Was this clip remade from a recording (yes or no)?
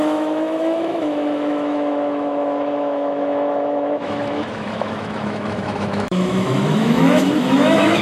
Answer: yes